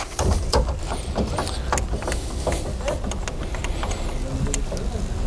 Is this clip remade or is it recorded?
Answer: recorded